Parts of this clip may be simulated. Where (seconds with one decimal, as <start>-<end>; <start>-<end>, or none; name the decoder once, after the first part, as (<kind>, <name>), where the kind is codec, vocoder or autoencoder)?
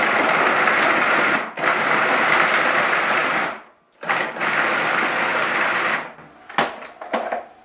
none